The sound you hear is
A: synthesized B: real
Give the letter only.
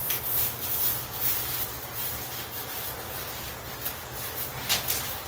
B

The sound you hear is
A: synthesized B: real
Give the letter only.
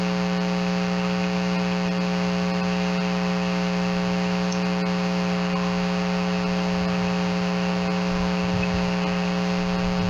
B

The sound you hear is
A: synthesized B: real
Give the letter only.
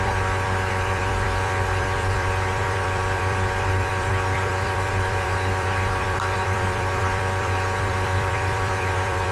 A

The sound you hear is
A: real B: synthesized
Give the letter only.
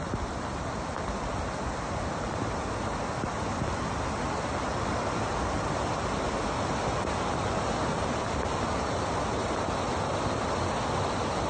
A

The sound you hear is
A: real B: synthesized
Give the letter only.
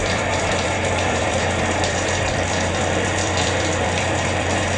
B